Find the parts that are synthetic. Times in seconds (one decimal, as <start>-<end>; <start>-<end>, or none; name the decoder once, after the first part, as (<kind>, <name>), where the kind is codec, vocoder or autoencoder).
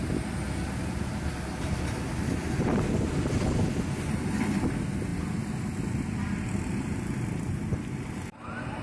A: none